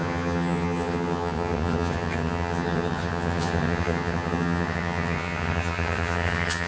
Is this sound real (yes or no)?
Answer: no